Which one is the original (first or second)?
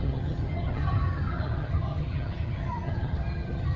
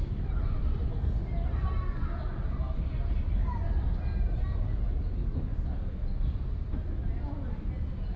second